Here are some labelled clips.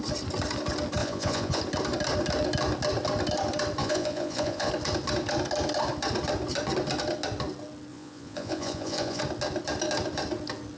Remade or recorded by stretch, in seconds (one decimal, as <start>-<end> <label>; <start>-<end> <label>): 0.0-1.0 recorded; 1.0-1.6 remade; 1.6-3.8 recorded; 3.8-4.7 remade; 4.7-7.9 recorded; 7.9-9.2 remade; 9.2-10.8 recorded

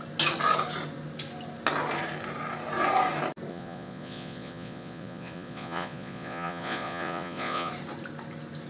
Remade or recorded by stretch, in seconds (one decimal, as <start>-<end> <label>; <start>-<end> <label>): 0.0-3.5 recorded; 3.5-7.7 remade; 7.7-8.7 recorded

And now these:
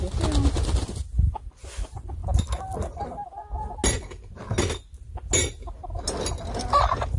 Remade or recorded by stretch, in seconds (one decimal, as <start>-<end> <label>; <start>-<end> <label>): 0.0-7.2 recorded

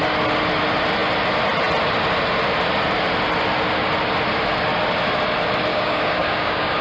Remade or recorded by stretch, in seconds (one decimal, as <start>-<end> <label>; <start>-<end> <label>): 0.0-5.7 recorded; 5.7-6.8 remade